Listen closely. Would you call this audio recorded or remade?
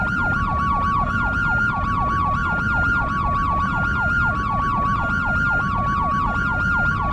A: recorded